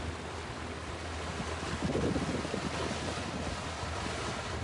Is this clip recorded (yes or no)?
yes